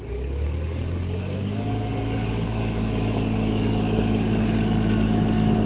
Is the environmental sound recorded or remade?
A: remade